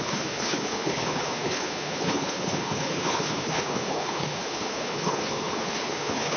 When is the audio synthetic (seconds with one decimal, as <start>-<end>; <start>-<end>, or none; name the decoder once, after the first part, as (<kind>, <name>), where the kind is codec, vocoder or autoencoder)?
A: 0.0-6.4 (codec, HILCodec)

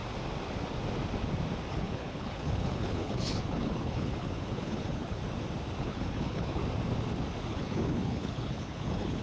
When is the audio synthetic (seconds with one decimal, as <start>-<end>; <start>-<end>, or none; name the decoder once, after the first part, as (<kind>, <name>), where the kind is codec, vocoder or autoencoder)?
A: 1.7-5.2 (codec, HILCodec); 5.8-6.6; 7.5-9.2

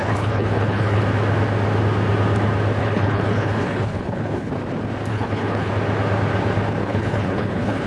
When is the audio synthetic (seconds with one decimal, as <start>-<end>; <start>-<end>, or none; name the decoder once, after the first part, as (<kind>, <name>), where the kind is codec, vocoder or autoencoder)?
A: 0.0-1.0 (codec, HILCodec); 2.8-4.5; 5.1-5.7; 6.8-7.9

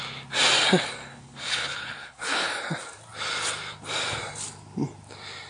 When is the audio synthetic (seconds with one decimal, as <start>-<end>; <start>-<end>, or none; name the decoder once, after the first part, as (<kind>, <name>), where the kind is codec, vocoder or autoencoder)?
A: 1.1-2.5 (codec, HILCodec)

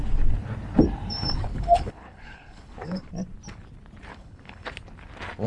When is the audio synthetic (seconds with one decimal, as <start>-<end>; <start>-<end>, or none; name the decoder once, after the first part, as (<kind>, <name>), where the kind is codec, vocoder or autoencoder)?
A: 1.5-3.1 (codec, HILCodec); 4.1-4.7

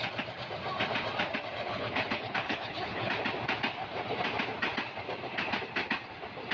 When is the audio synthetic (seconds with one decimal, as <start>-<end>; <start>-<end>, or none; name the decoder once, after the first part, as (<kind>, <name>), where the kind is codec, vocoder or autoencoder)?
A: 1.7-3.1 (codec, HILCodec)

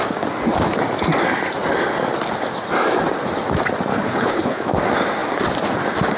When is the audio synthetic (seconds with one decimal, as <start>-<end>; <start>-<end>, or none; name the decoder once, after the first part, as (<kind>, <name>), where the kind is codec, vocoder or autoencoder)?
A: 3.9-4.7 (codec, HILCodec)

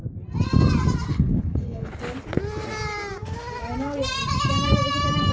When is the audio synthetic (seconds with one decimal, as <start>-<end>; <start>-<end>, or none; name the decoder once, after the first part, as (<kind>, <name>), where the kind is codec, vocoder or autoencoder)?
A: 1.1-1.9 (codec, HILCodec)